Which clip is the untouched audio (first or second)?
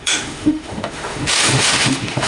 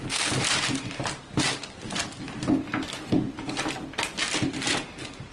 second